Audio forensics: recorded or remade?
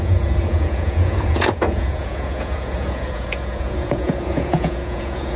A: remade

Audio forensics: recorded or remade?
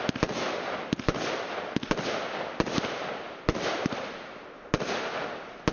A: recorded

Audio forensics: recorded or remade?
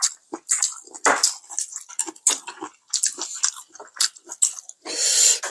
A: recorded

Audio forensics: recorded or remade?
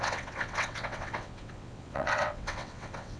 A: remade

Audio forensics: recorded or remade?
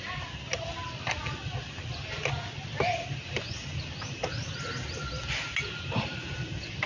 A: recorded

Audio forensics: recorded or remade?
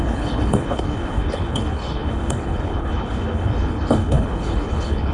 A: remade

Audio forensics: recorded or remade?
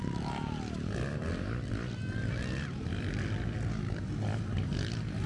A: recorded